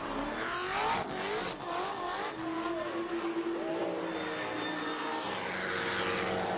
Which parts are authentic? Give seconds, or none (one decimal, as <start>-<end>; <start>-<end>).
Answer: 0.0-6.6